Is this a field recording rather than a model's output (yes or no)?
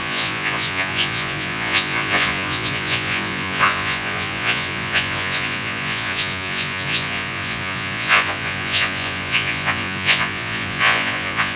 no